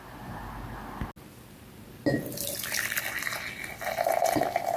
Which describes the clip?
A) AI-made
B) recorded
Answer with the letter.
B